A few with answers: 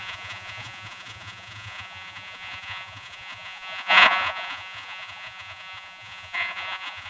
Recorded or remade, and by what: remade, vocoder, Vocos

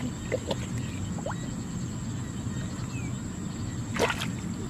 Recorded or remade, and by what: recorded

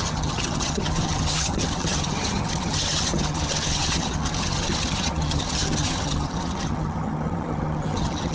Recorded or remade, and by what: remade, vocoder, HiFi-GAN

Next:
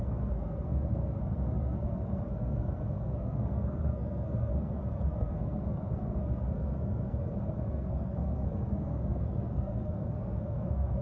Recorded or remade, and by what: remade, codec, SNAC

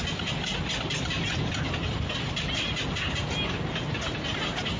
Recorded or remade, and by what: recorded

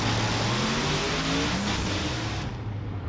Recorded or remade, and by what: recorded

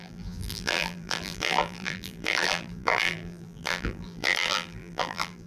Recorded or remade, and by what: remade, vocoder, BigVGAN v2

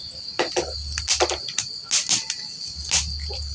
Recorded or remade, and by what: recorded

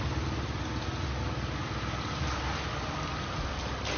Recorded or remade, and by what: recorded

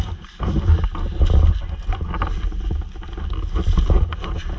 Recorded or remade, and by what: recorded